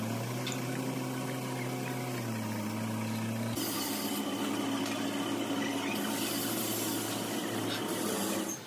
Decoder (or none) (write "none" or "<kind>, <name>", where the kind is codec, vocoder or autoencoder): none